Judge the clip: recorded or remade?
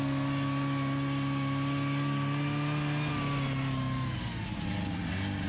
recorded